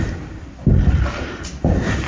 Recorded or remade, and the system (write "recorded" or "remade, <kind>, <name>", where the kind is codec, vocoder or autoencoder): recorded